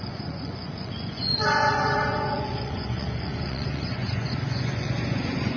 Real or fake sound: fake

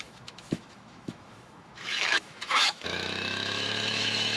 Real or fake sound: fake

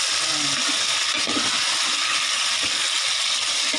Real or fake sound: real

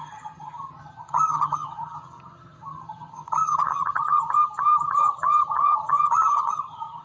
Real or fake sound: fake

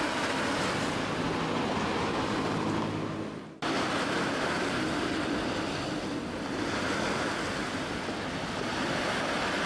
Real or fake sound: real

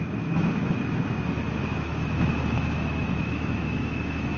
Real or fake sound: fake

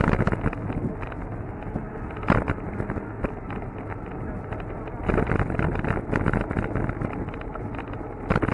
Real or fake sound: real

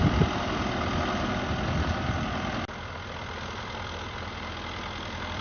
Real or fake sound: real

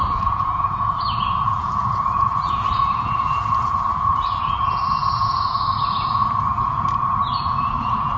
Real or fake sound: fake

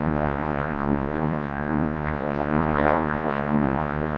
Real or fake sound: fake